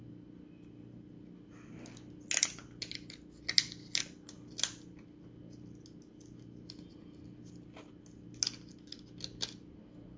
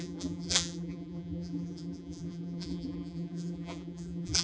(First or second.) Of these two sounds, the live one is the first